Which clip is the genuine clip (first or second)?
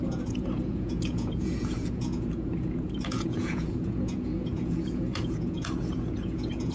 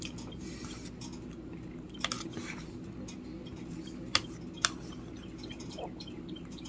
second